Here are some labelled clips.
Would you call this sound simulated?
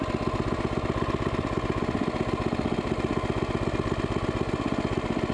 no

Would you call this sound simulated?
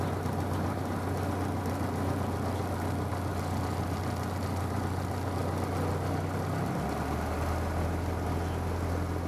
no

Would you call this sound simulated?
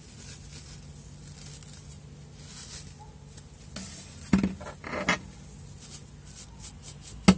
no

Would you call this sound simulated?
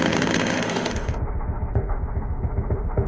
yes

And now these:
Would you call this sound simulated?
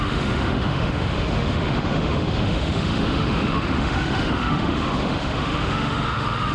yes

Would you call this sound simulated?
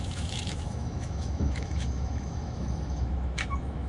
yes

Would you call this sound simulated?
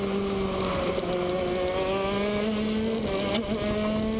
no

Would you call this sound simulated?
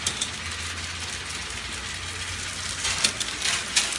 no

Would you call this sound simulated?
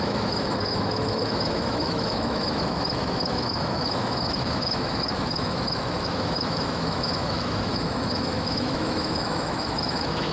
yes